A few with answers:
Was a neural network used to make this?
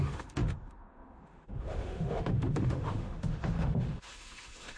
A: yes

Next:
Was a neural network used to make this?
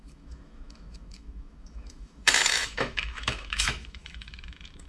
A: yes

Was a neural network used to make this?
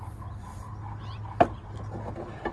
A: no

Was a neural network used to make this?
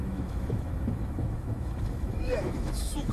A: yes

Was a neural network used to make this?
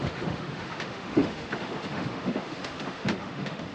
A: yes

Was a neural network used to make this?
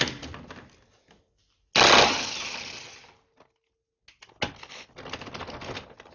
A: no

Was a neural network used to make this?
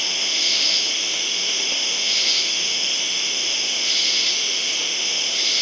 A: yes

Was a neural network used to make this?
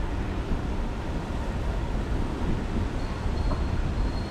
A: no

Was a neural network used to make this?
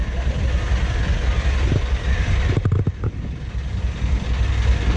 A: no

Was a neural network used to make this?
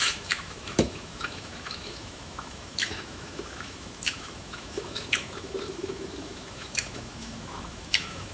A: yes